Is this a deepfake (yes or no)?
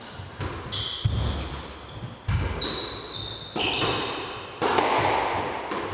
no